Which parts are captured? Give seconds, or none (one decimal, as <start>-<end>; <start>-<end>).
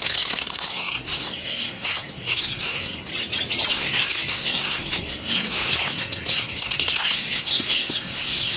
3.1-3.7